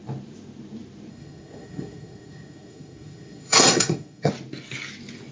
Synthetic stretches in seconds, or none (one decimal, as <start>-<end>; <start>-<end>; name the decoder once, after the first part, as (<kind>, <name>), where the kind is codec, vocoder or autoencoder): 1.1-4.3 (codec, SNAC)